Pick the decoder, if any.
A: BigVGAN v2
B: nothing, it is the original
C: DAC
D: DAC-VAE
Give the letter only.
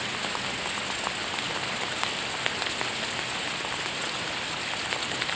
B